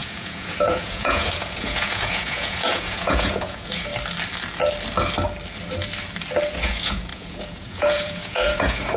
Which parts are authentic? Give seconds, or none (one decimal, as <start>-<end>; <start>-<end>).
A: 3.9-6.5

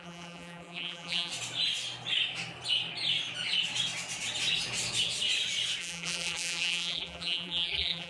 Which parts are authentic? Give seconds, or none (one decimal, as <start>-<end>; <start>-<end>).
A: 1.3-5.8

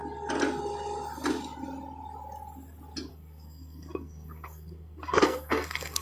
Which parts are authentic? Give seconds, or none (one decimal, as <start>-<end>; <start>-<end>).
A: 0.0-3.1

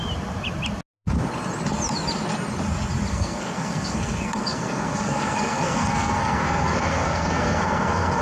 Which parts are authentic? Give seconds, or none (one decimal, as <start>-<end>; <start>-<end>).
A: 0.0-3.1

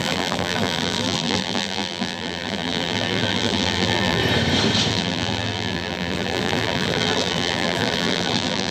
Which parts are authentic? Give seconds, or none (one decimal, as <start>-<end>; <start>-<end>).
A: 4.2-4.9

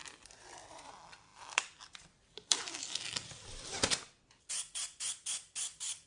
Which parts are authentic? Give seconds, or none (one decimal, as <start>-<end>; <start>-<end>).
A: 0.9-1.3; 5.0-6.1